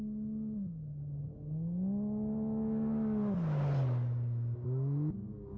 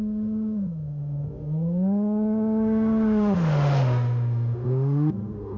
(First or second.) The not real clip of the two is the second